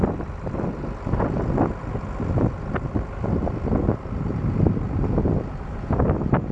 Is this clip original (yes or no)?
yes